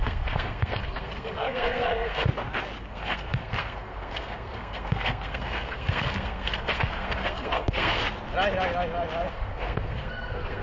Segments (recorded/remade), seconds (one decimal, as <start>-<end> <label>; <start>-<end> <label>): 0.0-2.3 remade; 2.3-2.9 recorded; 2.9-8.0 remade; 8.0-9.3 recorded; 9.3-10.6 remade